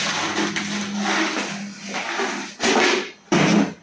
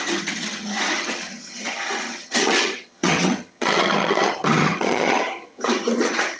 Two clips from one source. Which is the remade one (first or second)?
second